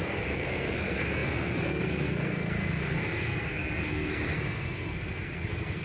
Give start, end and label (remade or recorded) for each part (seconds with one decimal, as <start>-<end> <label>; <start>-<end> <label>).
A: 0.0-5.8 remade